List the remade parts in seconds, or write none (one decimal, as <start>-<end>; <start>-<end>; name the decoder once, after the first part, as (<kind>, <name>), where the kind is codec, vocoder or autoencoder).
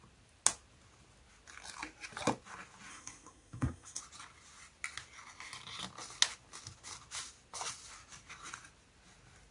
2.9-4.0 (codec, SNAC)